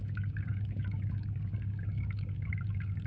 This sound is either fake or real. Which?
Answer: fake